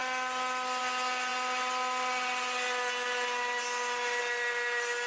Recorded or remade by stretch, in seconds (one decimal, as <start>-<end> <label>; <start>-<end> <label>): 0.0-5.1 recorded